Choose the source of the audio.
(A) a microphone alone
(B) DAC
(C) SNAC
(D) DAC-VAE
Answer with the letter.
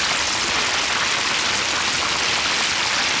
A